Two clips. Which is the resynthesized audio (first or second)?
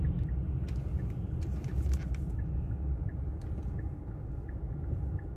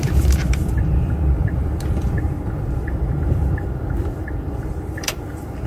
second